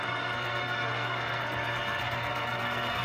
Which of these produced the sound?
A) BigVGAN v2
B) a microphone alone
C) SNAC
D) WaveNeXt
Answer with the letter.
C